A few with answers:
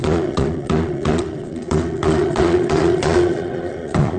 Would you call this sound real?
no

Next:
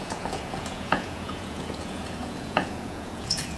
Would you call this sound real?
no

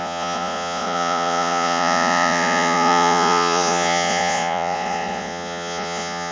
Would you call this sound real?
no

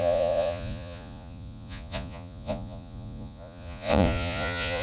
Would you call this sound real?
no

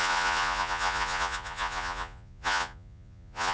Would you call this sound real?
no